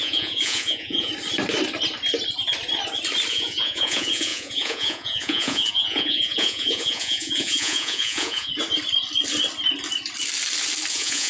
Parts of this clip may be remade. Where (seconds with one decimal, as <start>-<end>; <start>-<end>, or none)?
0.0-1.1; 3.3-8.5; 10.9-11.3